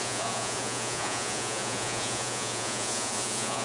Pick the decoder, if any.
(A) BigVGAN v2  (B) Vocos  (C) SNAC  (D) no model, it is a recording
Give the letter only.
B